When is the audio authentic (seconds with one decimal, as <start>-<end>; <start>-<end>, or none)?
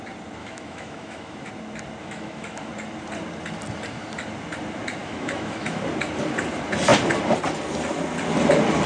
0.0-0.4; 1.5-2.0; 2.7-5.0; 5.8-8.9